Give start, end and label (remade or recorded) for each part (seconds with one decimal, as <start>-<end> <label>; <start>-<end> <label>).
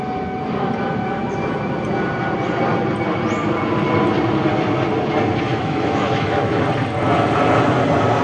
0.0-5.5 recorded; 5.5-6.6 remade; 6.6-8.2 recorded